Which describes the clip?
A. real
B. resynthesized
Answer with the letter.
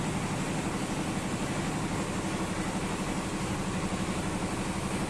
A